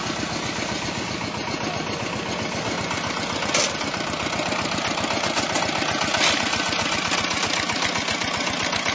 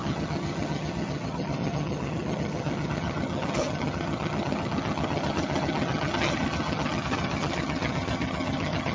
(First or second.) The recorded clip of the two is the first